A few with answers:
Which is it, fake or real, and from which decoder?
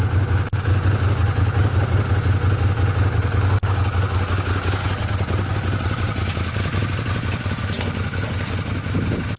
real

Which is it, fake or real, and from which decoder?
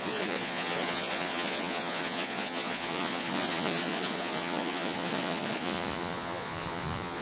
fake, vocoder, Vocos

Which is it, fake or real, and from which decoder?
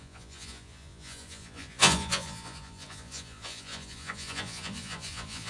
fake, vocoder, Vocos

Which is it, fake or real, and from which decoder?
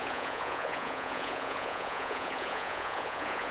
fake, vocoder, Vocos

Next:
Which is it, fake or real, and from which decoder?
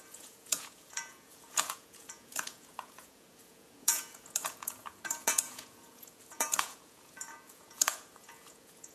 fake, vocoder, Vocos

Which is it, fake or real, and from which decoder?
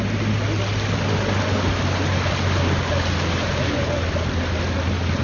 real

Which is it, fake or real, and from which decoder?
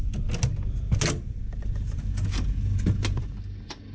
real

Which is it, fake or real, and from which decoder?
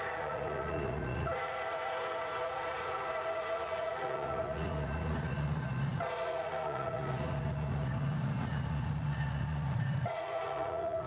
fake, vocoder, Vocos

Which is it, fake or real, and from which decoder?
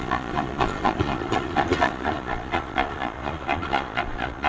fake, vocoder, Vocos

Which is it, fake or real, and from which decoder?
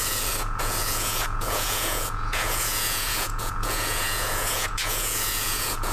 fake, vocoder, Vocos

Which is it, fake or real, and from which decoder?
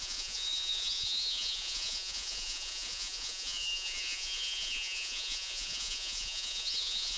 fake, vocoder, Vocos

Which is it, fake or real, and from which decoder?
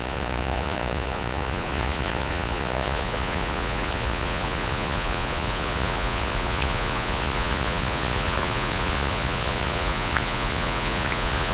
fake, vocoder, Vocos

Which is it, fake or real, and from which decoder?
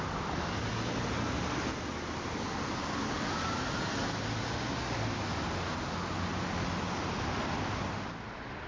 real